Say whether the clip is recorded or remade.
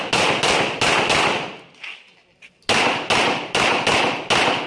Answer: recorded